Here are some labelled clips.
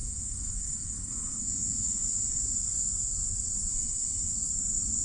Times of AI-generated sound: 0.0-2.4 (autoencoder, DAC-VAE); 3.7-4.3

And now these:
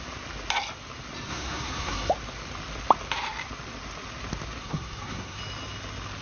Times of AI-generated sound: 1.3-2.1 (codec, SNAC); 4.6-5.4